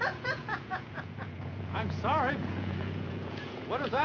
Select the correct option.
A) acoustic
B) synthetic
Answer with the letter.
B